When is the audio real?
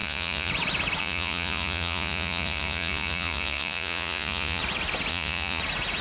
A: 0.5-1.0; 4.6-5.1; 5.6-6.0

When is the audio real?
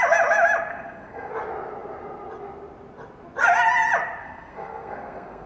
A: 0.0-0.7; 1.3-4.2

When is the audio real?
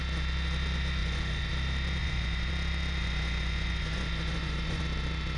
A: 0.0-1.0; 1.5-2.0; 2.5-3.0; 4.8-5.4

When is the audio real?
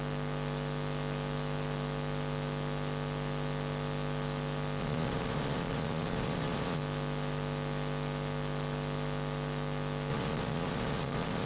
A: 0.0-4.8; 6.8-10.1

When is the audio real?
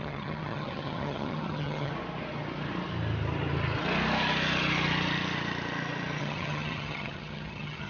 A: 1.9-6.2